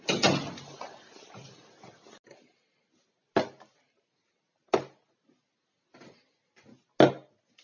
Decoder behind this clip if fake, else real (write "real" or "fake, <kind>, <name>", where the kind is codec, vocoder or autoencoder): real